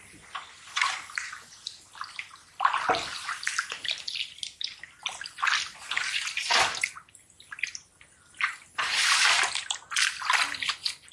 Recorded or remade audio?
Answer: recorded